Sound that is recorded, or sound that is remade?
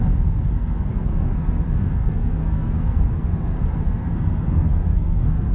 remade